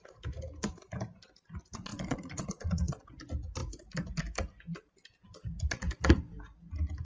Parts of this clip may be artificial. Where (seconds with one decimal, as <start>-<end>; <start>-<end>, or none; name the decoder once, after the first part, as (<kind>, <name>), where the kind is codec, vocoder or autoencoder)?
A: 1.9-2.8 (vocoder, Vocos)